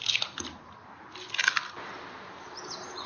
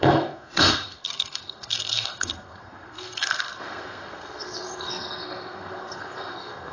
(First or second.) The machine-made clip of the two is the second